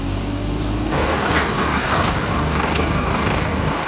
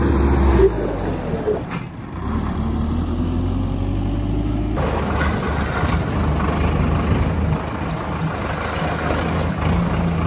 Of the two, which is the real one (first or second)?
second